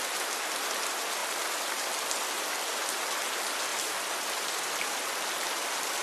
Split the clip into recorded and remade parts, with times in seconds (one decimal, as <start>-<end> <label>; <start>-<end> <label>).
0.0-3.7 recorded; 3.7-5.1 remade; 5.1-6.0 recorded